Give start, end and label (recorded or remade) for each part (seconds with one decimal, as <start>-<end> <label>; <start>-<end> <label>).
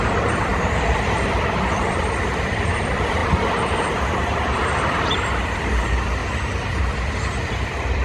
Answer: 0.0-3.2 remade; 3.2-3.8 recorded; 3.8-6.2 remade; 6.2-6.8 recorded; 6.8-8.0 remade